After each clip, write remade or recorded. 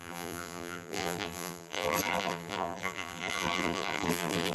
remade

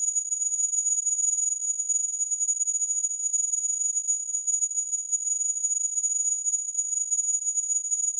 remade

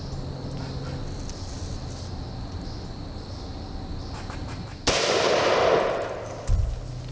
recorded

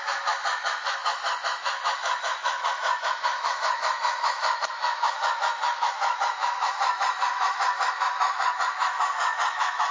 remade